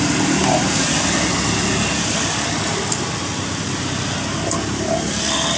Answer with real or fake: real